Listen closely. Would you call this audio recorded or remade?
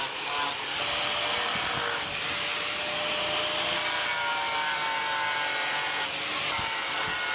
recorded